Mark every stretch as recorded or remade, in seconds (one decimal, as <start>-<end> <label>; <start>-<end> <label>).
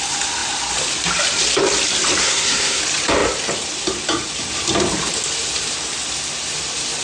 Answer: 0.0-2.2 recorded; 2.2-2.8 remade; 2.8-7.0 recorded